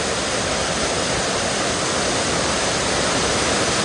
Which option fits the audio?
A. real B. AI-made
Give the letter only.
A